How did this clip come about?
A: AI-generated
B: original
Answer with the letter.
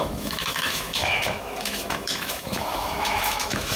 A